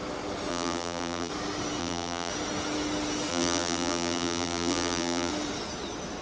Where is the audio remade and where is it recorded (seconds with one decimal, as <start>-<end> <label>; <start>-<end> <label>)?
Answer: 0.0-0.5 recorded; 0.5-1.3 remade; 1.3-1.8 recorded; 1.8-2.3 remade; 2.3-3.3 recorded; 3.3-5.3 remade; 5.3-6.2 recorded